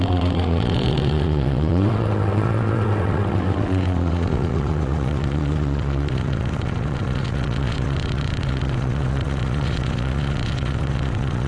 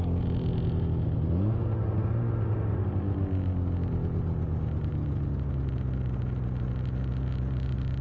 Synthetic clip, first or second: first